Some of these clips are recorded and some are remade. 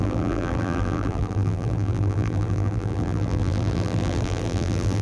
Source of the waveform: remade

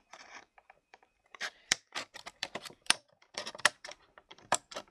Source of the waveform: remade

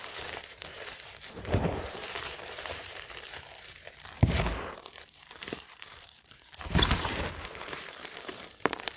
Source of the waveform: remade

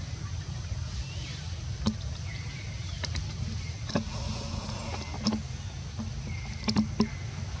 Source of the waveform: recorded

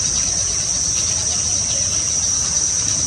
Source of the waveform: remade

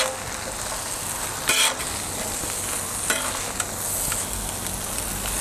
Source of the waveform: recorded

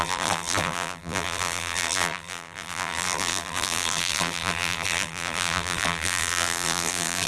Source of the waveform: remade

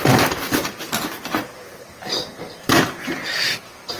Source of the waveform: remade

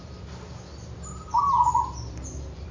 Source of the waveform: remade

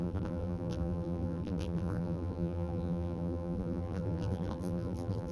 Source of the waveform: remade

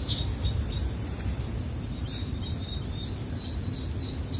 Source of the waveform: remade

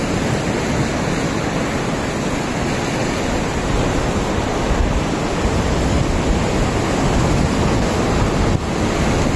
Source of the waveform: recorded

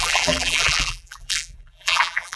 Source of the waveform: remade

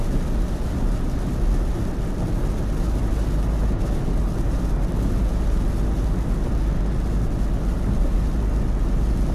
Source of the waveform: recorded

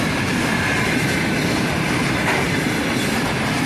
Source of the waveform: recorded